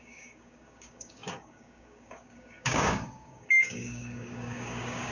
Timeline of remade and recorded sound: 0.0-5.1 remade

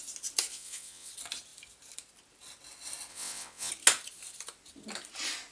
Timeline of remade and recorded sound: 0.0-0.5 recorded; 0.5-1.1 remade; 1.1-3.1 recorded; 3.1-3.7 remade; 3.7-5.5 recorded

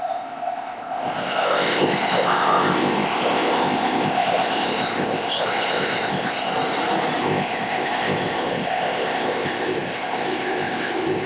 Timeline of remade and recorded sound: 0.0-6.5 remade; 6.5-7.2 recorded; 7.2-11.3 remade

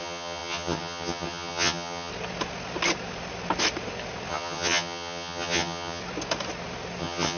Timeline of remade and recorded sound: 0.0-2.1 remade; 2.1-4.3 recorded; 4.3-6.0 remade; 6.0-7.0 recorded; 7.0-7.4 remade

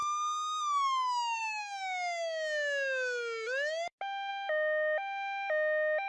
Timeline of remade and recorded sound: 0.0-6.1 recorded

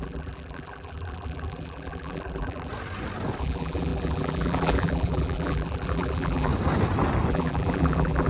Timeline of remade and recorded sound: 0.0-2.7 remade; 2.7-3.4 recorded; 3.4-6.5 remade; 6.5-7.3 recorded; 7.3-8.3 remade

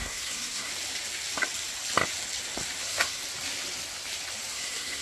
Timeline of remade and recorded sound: 0.0-0.7 remade; 0.7-2.8 recorded; 2.8-3.2 remade; 3.2-4.5 recorded; 4.5-5.0 remade

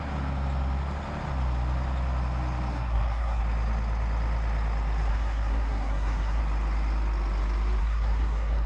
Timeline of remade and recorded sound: 0.0-2.7 recorded; 2.7-3.4 remade; 3.4-5.1 recorded; 5.1-6.4 remade; 6.4-7.8 recorded; 7.8-8.7 remade